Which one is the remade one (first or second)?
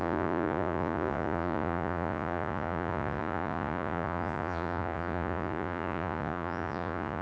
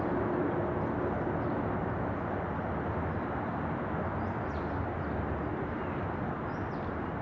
first